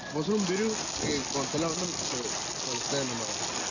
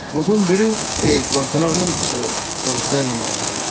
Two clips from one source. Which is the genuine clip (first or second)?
first